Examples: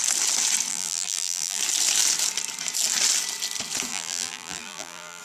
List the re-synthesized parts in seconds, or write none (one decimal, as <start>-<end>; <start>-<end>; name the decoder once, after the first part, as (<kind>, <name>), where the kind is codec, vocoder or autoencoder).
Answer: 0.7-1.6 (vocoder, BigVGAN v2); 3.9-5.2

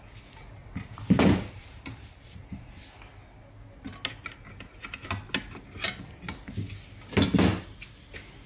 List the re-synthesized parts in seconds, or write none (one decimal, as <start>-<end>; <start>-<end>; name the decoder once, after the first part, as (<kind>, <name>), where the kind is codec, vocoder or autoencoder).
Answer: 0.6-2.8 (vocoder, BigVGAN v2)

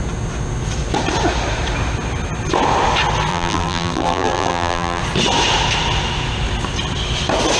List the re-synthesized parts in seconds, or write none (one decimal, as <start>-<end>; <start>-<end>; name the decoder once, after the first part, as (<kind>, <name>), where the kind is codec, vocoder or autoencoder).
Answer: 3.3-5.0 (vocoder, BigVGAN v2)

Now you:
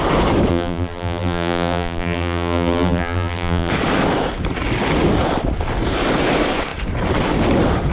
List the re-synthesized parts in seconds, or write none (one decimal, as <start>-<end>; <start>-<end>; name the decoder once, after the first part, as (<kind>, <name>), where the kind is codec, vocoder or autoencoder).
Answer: 0.5-3.7 (vocoder, BigVGAN v2)